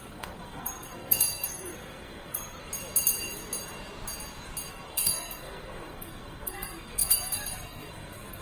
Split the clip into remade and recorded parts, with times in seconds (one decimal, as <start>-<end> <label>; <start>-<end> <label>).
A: 0.0-2.7 remade; 2.7-4.7 recorded; 4.7-8.4 remade